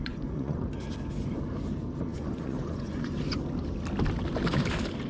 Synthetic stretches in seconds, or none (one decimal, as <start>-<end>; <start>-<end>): 0.0-0.6; 2.1-3.1